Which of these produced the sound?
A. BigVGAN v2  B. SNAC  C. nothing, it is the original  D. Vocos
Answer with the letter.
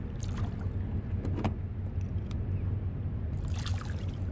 A